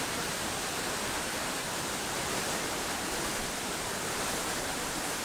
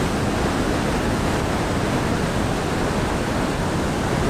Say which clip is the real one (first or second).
second